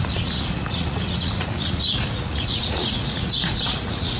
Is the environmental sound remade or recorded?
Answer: remade